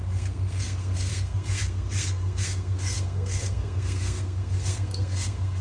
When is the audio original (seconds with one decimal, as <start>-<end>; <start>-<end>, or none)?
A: none